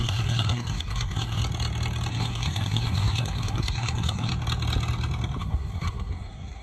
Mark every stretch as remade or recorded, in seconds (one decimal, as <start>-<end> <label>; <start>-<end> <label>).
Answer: 0.0-1.4 remade; 1.4-2.1 recorded; 2.1-4.3 remade; 4.3-5.4 recorded; 5.4-6.6 remade